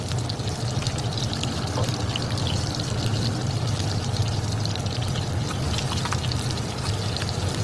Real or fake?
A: real